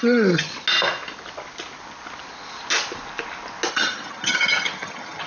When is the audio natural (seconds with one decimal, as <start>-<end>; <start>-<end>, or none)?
0.5-3.7

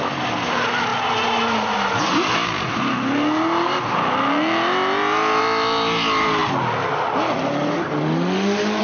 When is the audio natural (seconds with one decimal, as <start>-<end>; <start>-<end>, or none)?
0.0-8.8

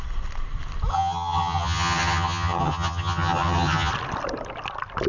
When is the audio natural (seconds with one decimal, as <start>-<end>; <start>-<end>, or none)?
0.0-0.9; 3.9-5.1

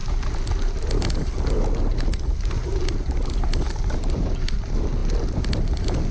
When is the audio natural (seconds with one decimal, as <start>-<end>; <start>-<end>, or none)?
0.0-6.1

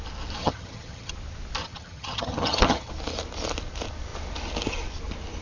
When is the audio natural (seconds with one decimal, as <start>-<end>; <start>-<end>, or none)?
0.0-0.4; 1.1-1.6; 2.9-5.4

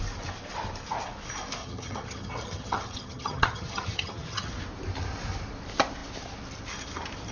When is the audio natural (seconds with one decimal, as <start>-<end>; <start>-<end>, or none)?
0.0-1.6; 4.5-7.3

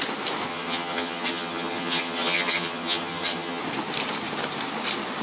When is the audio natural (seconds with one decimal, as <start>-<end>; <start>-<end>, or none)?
0.0-0.5; 3.6-5.2

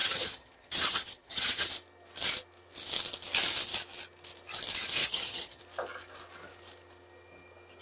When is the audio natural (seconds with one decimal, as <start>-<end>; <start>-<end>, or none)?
1.7-5.0; 5.6-7.8